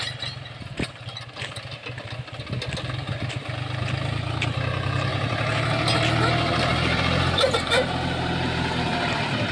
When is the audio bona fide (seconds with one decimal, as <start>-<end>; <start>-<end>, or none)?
0.0-9.5